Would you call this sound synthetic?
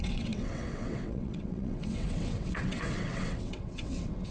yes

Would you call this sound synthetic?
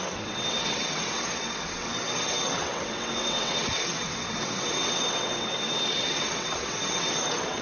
yes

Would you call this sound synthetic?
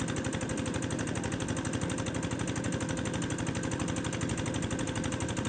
no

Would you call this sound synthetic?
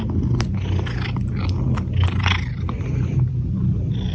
no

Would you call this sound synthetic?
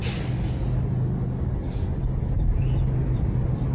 no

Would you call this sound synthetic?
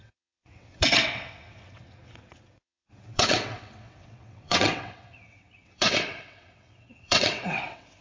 yes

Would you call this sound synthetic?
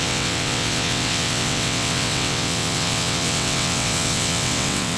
yes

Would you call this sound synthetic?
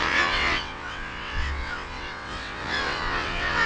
yes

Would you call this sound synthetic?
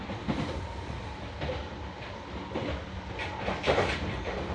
no